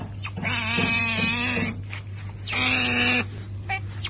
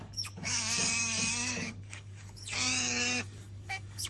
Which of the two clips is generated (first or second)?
second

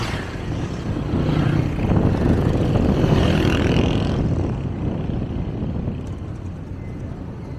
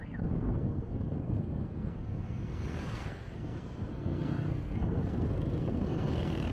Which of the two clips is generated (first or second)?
second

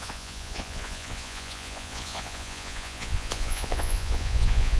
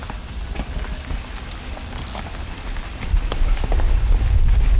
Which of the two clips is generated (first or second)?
first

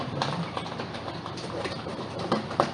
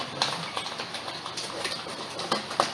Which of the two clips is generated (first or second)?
first